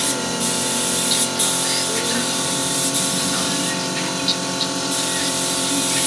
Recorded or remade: recorded